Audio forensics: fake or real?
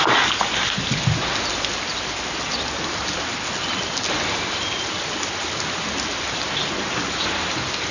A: real